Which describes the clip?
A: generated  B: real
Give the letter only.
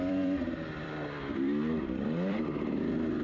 A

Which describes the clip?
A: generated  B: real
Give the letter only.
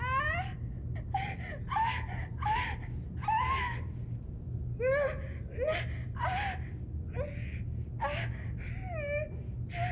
B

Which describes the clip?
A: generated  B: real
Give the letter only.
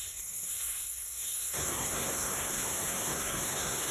A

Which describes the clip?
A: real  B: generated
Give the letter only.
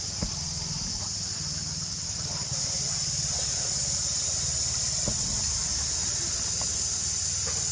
A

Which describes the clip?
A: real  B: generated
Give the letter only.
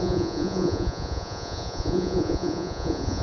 B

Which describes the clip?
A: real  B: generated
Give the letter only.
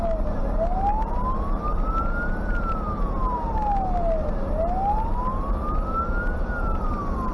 A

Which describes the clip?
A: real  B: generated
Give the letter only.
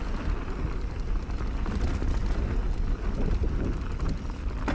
A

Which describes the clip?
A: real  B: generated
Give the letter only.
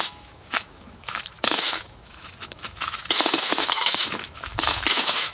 B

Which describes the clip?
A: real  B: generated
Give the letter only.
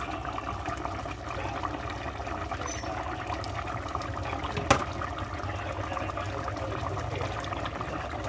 A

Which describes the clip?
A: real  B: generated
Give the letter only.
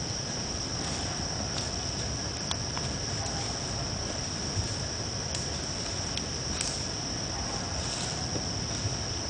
A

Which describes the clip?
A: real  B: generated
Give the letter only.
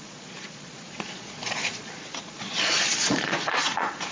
B